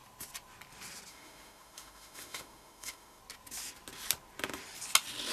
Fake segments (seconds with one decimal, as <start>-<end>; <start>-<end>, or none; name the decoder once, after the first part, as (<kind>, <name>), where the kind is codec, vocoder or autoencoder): 1.1-3.2 (autoencoder, DAC-VAE)